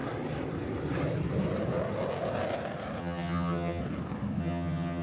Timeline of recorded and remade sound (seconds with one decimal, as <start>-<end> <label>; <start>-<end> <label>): 0.0-3.0 recorded; 3.0-3.8 remade; 3.8-4.4 recorded; 4.4-5.0 remade